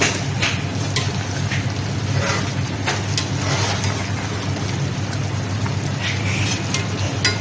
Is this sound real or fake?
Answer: real